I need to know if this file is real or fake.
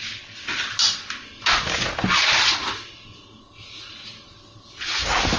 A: real